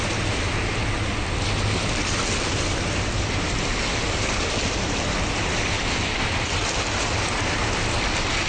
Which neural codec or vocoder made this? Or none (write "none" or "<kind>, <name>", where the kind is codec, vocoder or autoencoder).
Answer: none